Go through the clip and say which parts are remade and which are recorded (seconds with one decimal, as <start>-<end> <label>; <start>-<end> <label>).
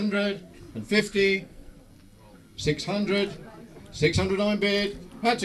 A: 0.0-0.5 remade; 0.5-1.0 recorded; 1.0-1.9 remade; 1.9-5.4 recorded